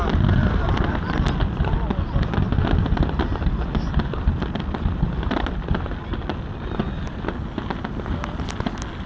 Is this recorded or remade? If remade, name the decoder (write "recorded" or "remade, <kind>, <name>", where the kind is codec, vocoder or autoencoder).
recorded